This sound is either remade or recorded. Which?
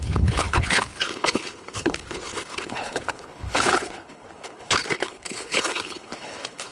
remade